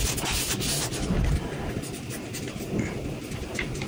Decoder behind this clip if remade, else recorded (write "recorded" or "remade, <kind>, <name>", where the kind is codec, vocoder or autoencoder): recorded